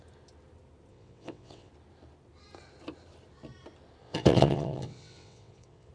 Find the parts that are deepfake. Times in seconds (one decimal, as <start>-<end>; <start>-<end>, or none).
0.9-1.7; 4.0-5.9